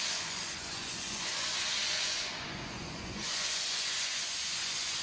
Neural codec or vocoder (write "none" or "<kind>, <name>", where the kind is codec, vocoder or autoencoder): vocoder, Vocos